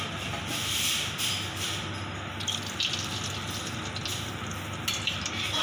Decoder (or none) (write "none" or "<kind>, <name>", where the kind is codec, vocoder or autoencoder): none